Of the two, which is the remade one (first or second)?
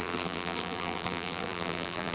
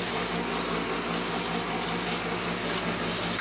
first